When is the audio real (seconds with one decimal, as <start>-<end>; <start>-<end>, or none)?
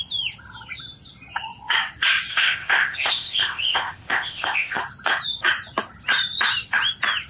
0.0-2.3; 4.8-7.3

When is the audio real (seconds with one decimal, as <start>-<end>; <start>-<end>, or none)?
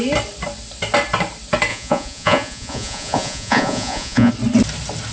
0.0-1.7; 4.3-5.1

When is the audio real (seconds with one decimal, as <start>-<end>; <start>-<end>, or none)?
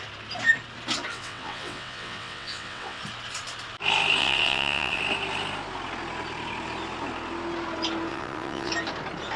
0.0-1.1; 3.0-4.2; 5.0-8.1; 8.7-9.4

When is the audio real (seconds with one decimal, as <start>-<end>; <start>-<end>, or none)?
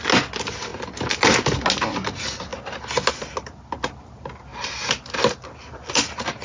0.0-6.4